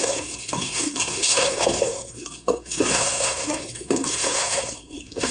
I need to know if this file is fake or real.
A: fake